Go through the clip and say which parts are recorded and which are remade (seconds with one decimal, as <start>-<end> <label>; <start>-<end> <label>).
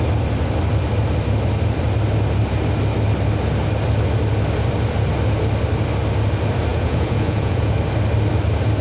0.0-6.7 recorded; 6.7-7.7 remade; 7.7-8.8 recorded